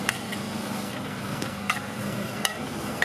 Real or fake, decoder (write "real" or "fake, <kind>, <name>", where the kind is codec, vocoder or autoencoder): fake, codec, SNAC